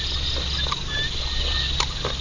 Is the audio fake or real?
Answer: real